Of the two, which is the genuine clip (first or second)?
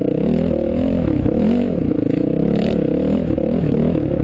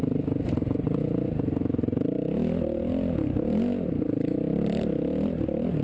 second